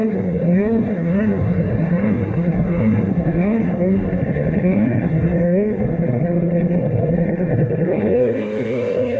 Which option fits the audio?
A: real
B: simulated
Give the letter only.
B